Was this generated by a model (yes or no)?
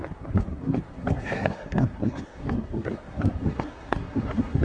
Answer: yes